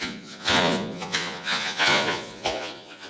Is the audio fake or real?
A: fake